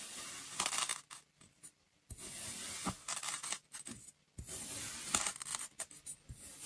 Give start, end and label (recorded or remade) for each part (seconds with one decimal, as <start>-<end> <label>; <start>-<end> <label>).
0.0-6.7 recorded